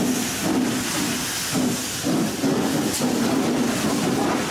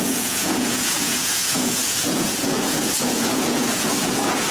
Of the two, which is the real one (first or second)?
first